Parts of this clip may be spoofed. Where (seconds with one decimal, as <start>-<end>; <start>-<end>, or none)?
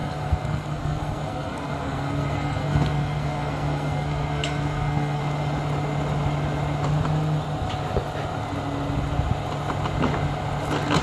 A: 0.0-5.2